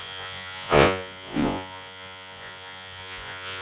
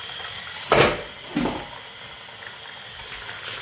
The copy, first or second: first